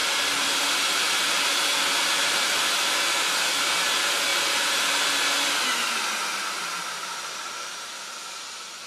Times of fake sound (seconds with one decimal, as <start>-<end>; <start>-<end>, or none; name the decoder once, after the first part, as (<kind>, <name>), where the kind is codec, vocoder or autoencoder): 0.0-2.6 (vocoder, BigVGAN v2); 4.3-4.8; 6.8-7.9